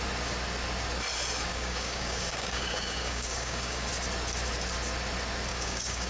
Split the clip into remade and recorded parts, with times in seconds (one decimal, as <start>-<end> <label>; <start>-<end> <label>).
0.0-1.5 recorded; 1.5-3.9 remade; 3.9-5.5 recorded; 5.5-6.1 remade